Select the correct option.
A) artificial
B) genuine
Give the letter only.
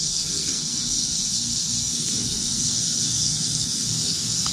A